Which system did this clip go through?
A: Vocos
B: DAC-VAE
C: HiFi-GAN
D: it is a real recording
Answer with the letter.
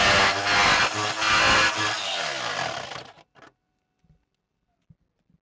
D